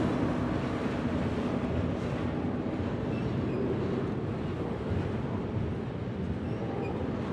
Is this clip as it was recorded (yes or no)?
yes